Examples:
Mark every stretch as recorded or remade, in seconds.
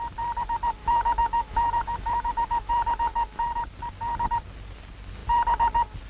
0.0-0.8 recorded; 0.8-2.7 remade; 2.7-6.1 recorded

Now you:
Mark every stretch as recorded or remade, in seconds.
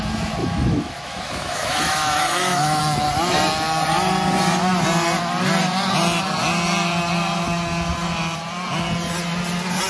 0.0-0.4 recorded; 0.4-2.8 remade; 2.8-9.9 recorded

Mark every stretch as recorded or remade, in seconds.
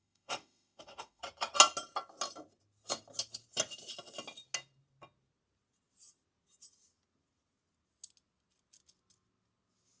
0.0-1.2 remade; 1.2-10.0 recorded